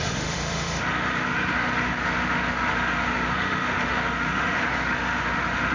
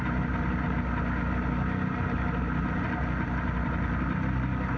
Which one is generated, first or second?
first